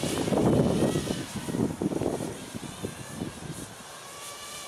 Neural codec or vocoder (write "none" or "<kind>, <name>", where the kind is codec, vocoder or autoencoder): none